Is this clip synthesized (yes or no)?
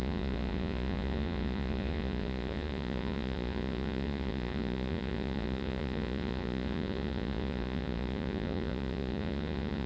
yes